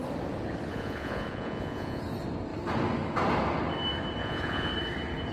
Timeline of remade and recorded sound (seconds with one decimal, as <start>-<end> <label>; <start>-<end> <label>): 0.0-0.7 recorded; 0.7-2.0 remade; 2.0-4.2 recorded; 4.2-4.7 remade; 4.7-5.3 recorded